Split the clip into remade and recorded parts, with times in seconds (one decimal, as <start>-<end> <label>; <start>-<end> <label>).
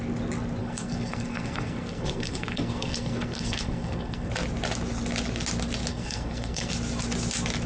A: 0.0-0.6 recorded; 0.6-4.3 remade; 4.3-5.9 recorded; 5.9-6.7 remade; 6.7-7.7 recorded